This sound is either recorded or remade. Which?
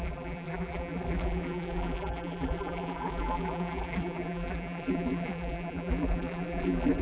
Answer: remade